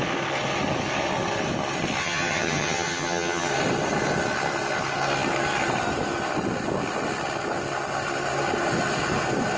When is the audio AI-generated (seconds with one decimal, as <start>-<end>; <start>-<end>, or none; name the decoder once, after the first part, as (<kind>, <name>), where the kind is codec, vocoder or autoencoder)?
2.0-3.5 (vocoder, HiFi-GAN)